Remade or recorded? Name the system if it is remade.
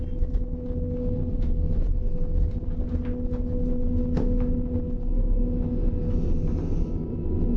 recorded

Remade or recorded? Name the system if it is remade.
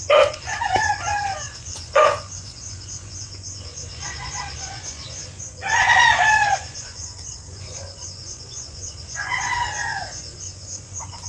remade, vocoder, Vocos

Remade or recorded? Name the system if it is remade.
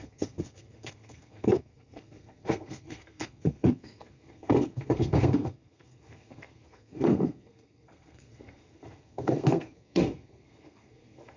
remade, codec, SNAC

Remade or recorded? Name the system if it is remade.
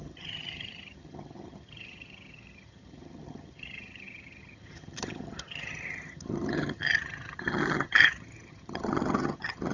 remade, vocoder, HiFi-GAN